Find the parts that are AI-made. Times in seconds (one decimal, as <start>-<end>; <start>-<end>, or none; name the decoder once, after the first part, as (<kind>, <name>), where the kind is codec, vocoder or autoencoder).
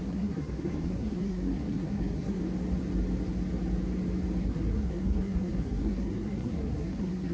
0.0-2.4 (codec, SNAC); 4.4-7.3